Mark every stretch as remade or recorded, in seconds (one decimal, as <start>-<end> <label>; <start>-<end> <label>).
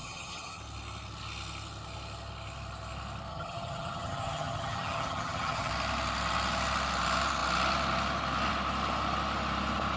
0.0-0.6 remade; 0.6-3.3 recorded; 3.3-5.7 remade; 5.7-10.0 recorded